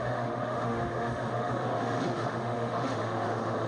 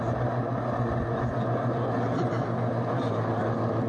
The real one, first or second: second